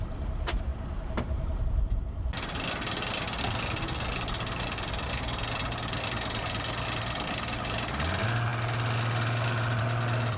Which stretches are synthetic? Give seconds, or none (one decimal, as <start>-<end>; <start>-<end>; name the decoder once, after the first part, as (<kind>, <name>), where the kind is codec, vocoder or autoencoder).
0.7-1.6 (vocoder, BigVGAN v2)